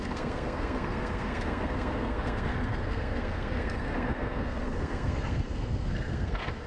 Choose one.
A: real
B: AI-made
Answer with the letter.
B